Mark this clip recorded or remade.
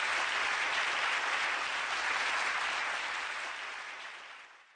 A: recorded